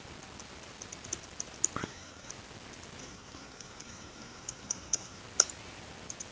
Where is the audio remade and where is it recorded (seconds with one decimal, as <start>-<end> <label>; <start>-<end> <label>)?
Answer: 0.0-1.8 recorded; 1.8-2.3 remade; 2.3-3.0 recorded; 3.0-5.2 remade; 5.2-6.3 recorded